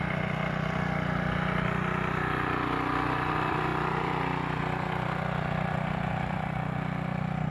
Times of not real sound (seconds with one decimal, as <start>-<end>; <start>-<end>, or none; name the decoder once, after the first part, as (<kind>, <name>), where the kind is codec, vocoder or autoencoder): none